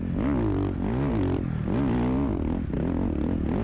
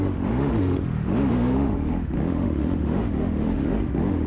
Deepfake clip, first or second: second